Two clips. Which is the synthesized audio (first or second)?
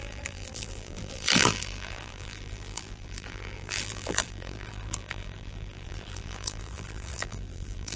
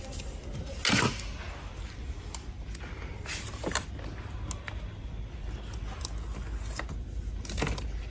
first